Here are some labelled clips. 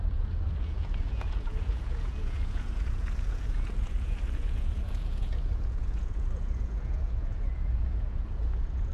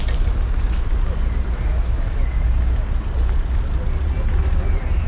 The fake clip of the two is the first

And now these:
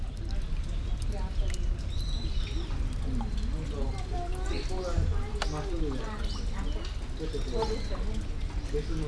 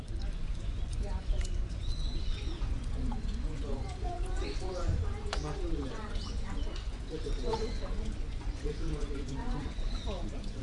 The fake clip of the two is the second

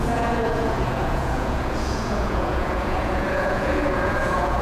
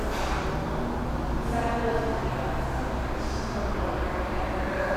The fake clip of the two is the first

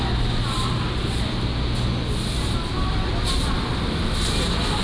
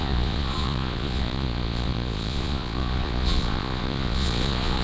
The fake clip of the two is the second